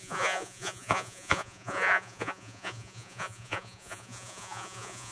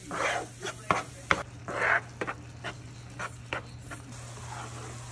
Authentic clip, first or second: second